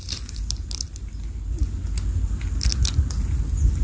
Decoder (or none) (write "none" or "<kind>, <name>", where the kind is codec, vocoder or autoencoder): none